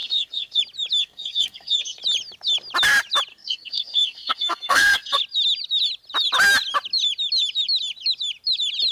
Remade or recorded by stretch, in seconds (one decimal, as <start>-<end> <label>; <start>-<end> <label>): 0.0-0.6 remade; 0.6-1.0 recorded; 1.0-2.0 remade; 2.0-3.3 recorded; 3.3-5.2 remade; 5.2-8.9 recorded